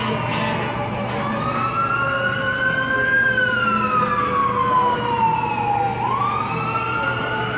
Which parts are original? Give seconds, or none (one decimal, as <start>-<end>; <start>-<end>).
0.0-7.6